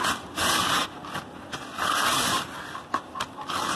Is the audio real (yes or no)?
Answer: yes